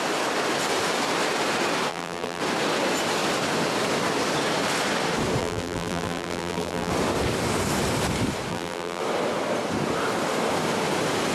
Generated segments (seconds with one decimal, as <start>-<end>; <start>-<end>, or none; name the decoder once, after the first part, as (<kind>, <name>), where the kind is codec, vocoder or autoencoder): 1.9-2.4 (vocoder, BigVGAN v2); 5.4-6.9; 8.5-9.0